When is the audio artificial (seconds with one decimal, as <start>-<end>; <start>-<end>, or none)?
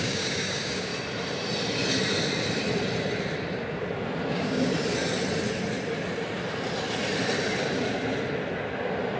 0.0-0.9; 4.3-4.7